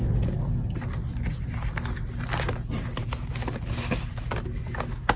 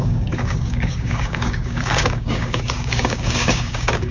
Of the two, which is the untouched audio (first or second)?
first